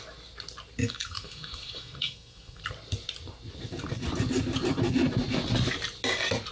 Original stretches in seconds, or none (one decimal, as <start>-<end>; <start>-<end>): 0.0-0.8; 2.6-6.5